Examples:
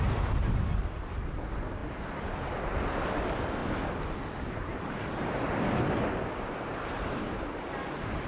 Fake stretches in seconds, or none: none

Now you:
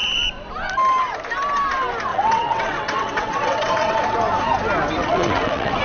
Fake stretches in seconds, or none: 2.1-4.0; 5.0-5.8

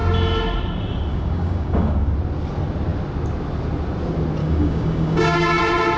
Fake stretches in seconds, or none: 1.1-2.1; 4.4-5.6